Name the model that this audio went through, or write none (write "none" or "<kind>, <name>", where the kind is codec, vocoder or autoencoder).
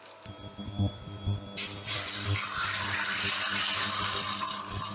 none